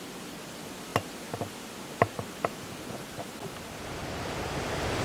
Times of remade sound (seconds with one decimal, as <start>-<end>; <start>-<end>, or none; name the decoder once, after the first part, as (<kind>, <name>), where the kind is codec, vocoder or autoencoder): none